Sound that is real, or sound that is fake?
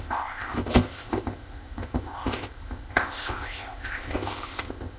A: fake